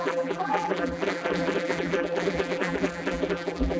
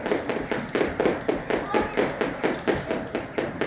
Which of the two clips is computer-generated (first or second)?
first